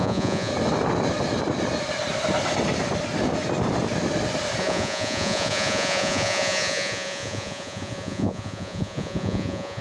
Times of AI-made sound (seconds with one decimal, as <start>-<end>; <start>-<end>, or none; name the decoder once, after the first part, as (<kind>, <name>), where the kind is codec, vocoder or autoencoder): 0.0-0.5 (vocoder, Vocos); 4.6-9.8